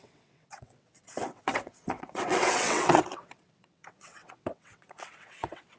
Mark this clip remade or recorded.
remade